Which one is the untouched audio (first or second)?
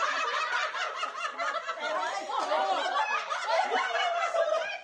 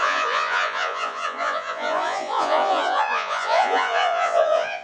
first